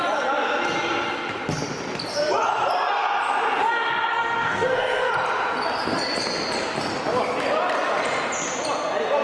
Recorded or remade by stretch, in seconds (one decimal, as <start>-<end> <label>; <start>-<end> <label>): 0.0-4.1 recorded; 4.1-5.1 remade; 5.1-9.2 recorded